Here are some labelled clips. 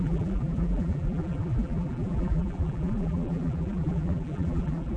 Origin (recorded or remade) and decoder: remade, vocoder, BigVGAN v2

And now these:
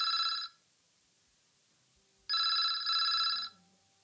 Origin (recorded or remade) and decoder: recorded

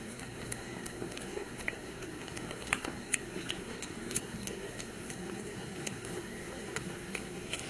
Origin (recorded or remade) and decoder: remade, codec, SNAC